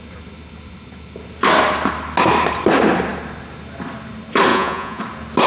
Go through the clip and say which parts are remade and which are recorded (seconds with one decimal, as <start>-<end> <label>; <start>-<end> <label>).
0.0-4.5 recorded; 4.5-5.0 remade; 5.0-5.5 recorded